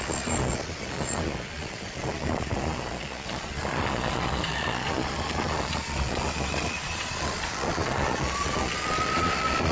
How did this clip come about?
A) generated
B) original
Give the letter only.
A